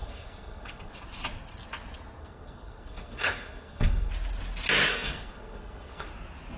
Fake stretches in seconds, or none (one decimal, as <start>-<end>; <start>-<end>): 0.0-0.9; 2.2-4.1; 4.9-6.1